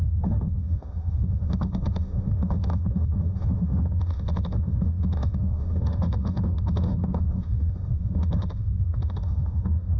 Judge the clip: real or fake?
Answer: fake